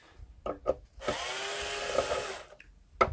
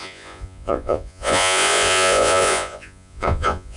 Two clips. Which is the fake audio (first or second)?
second